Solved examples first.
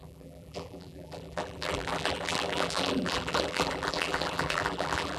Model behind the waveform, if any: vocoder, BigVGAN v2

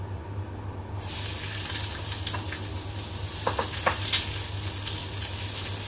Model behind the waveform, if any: none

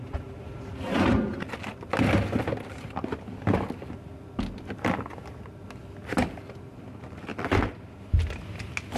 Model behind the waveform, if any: none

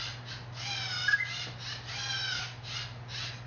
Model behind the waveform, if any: vocoder, BigVGAN v2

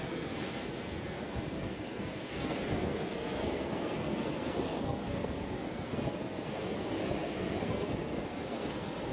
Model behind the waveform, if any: codec, SNAC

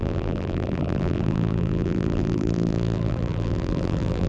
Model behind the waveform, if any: vocoder, BigVGAN v2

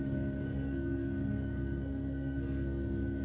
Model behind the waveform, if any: codec, SNAC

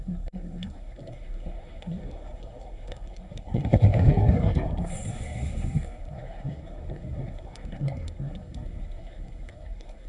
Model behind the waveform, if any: codec, SNAC